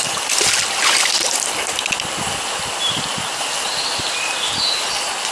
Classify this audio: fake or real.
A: real